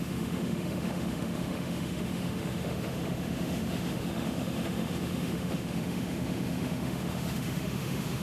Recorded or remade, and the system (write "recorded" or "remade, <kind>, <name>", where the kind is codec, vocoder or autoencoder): remade, autoencoder, DAC-VAE